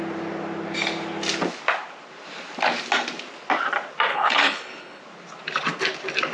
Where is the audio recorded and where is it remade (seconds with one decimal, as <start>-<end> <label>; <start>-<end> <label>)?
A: 0.0-4.1 recorded; 4.1-5.0 remade; 5.0-6.3 recorded